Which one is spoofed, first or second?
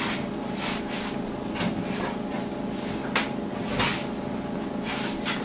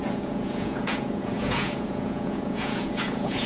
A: second